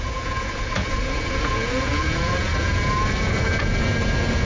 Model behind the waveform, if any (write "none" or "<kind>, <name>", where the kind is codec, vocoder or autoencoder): vocoder, Vocos